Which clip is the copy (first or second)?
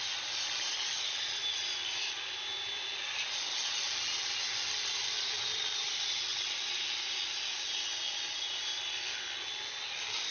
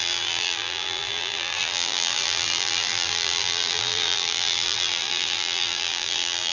second